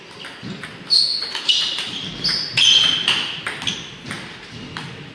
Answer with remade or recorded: recorded